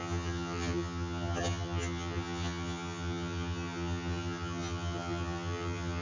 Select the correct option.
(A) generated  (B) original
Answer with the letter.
A